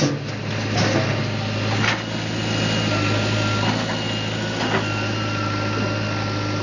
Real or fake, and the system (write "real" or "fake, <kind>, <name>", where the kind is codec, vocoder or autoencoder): real